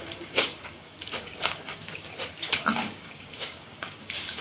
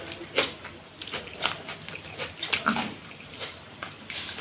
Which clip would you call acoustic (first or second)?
second